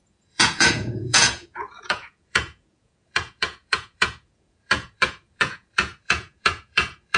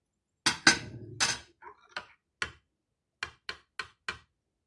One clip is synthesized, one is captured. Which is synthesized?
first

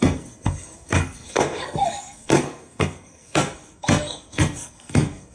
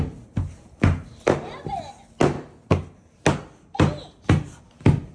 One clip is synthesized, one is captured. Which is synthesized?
first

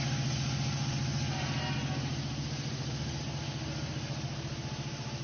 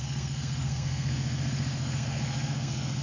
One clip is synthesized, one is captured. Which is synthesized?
second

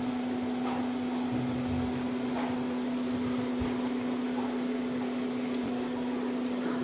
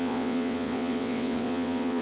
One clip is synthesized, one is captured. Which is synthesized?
second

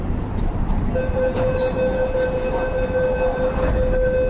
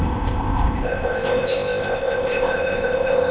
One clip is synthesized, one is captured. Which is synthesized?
second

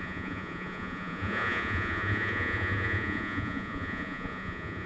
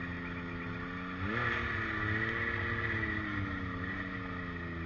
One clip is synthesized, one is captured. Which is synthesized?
first